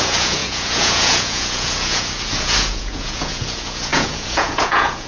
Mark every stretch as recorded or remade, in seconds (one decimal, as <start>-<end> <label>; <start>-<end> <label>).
0.0-5.1 remade